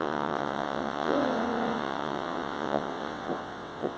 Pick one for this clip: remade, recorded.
remade